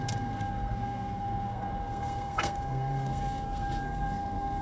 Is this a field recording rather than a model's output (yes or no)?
no